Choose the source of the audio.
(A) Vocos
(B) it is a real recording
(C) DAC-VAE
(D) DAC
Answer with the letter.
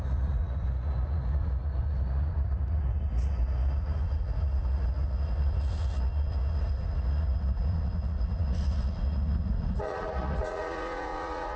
A